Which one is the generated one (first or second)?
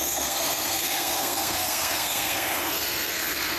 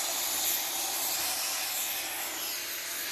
first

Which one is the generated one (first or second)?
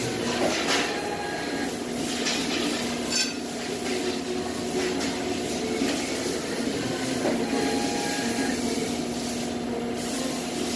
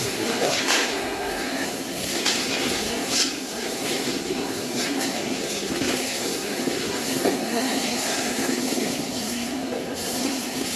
second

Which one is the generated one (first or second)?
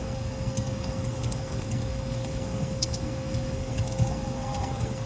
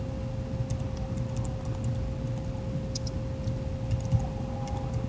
first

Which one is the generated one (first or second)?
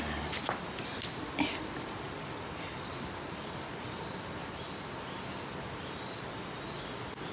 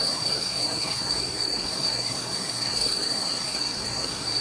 second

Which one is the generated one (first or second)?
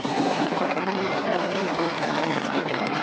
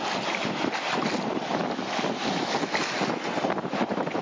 first